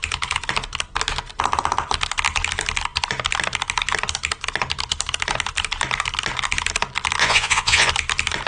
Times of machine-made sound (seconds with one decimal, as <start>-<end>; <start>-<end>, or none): 7.2-7.9